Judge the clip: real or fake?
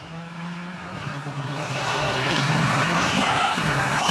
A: fake